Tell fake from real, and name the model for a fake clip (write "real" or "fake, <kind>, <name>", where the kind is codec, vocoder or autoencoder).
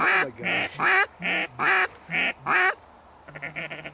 real